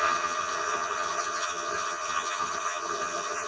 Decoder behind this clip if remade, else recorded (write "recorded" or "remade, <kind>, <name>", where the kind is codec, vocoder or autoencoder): remade, vocoder, HiFi-GAN